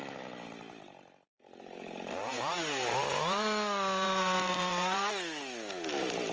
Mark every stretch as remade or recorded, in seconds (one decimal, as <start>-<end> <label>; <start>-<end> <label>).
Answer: 0.0-1.3 recorded; 1.3-5.1 remade; 5.1-6.3 recorded